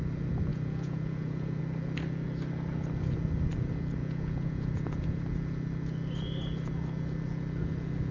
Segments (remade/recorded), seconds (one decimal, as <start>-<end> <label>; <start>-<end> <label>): 0.0-0.5 recorded; 0.5-1.6 remade; 1.6-4.0 recorded; 4.0-5.2 remade; 5.2-8.1 recorded